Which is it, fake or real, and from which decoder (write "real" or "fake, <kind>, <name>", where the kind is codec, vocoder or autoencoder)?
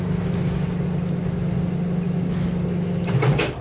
real